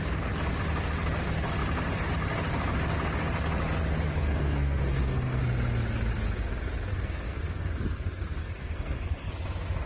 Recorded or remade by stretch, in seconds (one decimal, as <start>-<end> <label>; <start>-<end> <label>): 0.0-4.2 recorded; 4.2-5.4 remade; 5.4-6.9 recorded; 6.9-7.7 remade; 7.7-8.4 recorded; 8.4-9.3 remade; 9.3-9.9 recorded